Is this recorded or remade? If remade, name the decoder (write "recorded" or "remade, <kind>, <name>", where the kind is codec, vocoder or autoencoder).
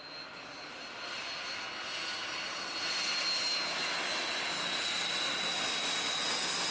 recorded